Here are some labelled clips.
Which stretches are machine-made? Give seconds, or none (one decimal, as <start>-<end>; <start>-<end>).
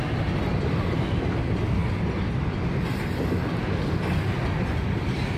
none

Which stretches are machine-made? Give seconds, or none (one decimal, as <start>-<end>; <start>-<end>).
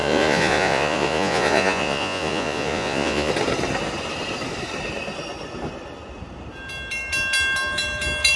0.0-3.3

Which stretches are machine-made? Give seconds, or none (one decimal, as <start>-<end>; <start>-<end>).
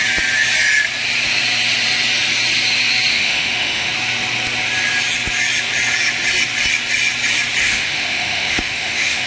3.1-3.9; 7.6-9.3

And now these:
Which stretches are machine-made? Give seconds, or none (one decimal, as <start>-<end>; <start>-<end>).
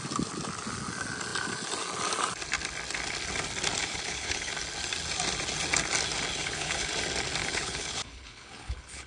3.8-4.5; 6.4-6.9; 7.4-9.1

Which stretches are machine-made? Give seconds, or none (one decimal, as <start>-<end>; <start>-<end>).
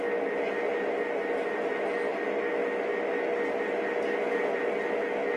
none